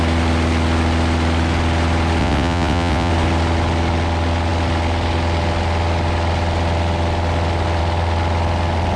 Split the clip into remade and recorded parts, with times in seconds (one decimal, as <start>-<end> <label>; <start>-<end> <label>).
0.0-2.2 recorded; 2.2-3.1 remade; 3.1-9.0 recorded